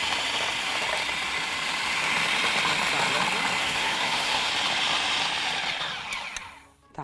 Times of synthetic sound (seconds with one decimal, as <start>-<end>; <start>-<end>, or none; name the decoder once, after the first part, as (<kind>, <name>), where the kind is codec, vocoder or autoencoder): 3.6-4.5 (codec, SNAC)